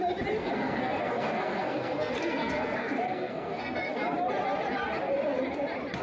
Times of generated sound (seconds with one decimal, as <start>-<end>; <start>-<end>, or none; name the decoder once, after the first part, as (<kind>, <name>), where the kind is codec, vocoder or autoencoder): 0.4-4.0 (codec, SNAC)

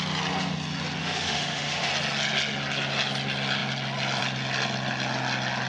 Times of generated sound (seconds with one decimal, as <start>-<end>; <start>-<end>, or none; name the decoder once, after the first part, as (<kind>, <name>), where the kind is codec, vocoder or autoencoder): 1.0-1.9 (autoencoder, DAC-VAE)

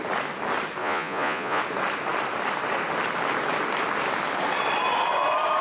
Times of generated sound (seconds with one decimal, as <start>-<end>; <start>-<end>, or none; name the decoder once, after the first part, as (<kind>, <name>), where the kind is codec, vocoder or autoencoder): 0.8-1.6 (vocoder, Vocos)

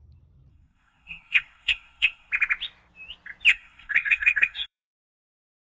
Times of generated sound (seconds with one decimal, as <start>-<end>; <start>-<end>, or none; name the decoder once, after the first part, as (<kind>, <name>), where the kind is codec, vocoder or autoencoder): 0.5-2.3 (codec, SNAC); 3.5-5.7

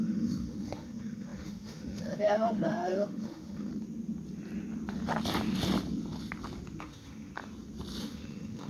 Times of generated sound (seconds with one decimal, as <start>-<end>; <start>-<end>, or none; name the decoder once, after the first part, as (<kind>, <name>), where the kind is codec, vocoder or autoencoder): 0.0-3.7 (autoencoder, DAC-VAE); 6.8-7.3; 8.0-8.7

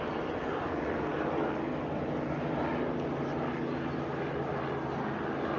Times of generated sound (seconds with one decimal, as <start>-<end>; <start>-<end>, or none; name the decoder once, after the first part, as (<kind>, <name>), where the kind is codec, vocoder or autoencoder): none